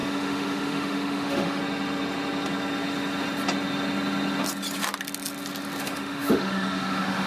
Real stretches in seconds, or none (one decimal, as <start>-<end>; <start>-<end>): 1.6-5.8